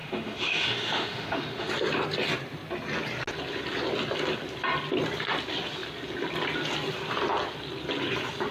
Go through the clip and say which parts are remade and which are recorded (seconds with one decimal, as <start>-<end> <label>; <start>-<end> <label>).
0.0-1.7 remade; 1.7-8.5 recorded

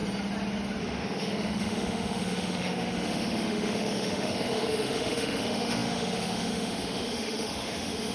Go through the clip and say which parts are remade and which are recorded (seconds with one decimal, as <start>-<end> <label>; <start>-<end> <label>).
0.0-0.8 recorded; 0.8-8.1 remade

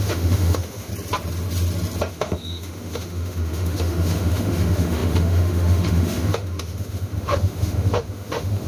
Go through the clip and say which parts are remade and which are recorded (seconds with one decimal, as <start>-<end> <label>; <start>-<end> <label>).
0.0-0.9 remade; 0.9-2.0 recorded; 2.0-8.7 remade

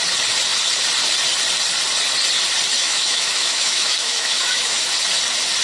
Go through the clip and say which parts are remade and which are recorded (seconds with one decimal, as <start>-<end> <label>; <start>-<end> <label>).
0.0-2.8 recorded; 2.8-4.8 remade; 4.8-5.6 recorded

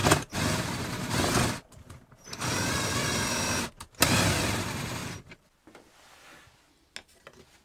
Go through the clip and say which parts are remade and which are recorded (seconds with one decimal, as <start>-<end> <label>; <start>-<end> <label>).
0.0-7.6 recorded

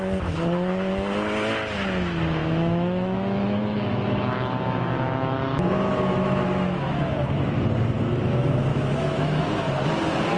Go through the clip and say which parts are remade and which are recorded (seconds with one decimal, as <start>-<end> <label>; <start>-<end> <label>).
0.0-2.4 recorded; 2.4-7.2 remade; 7.2-8.7 recorded; 8.7-9.4 remade; 9.4-10.4 recorded

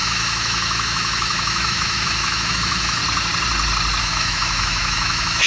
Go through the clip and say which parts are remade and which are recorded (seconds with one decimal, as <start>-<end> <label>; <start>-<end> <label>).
0.0-3.0 remade; 3.0-4.0 recorded; 4.0-5.5 remade